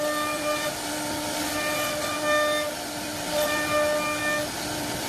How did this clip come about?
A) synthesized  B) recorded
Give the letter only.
B